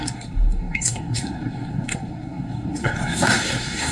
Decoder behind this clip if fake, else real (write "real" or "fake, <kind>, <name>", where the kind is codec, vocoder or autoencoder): fake, codec, SNAC